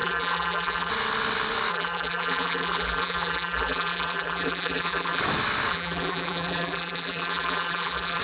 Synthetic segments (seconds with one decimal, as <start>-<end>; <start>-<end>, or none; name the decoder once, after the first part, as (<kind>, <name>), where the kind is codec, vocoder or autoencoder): 0.0-0.9 (vocoder, BigVGAN v2); 1.7-5.2; 5.7-8.2